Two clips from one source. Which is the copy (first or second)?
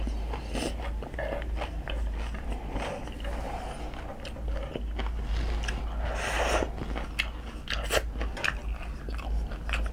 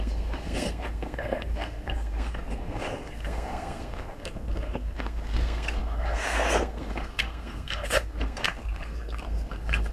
second